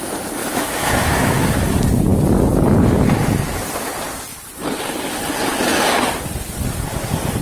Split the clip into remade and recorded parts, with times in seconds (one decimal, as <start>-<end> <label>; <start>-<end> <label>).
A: 0.0-0.4 recorded; 0.4-1.6 remade; 1.6-7.4 recorded